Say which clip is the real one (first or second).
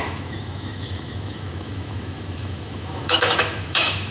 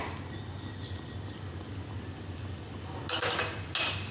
second